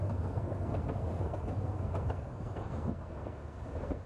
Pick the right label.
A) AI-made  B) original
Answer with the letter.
A